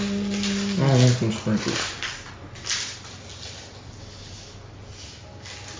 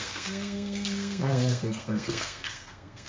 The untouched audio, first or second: first